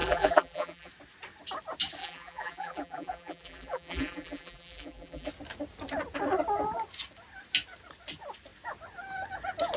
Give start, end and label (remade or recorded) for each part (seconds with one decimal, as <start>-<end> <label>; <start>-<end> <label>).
0.0-0.9 remade; 0.9-2.0 recorded; 2.0-5.3 remade; 5.3-9.8 recorded